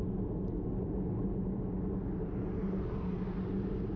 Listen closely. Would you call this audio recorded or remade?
recorded